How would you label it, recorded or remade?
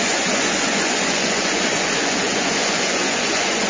remade